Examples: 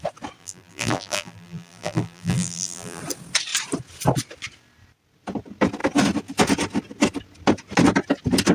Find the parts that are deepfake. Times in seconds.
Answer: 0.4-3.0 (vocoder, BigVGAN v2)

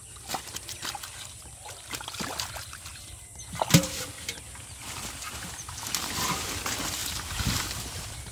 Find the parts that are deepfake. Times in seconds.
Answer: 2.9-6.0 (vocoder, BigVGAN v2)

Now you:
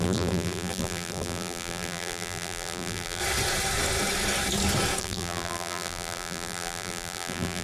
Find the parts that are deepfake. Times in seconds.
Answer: 0.0-3.2 (vocoder, BigVGAN v2); 5.0-7.6

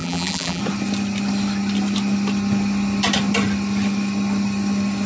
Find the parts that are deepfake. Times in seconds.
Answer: 0.0-0.6 (vocoder, BigVGAN v2)